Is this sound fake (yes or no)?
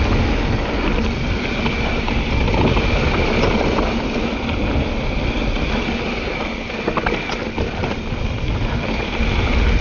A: no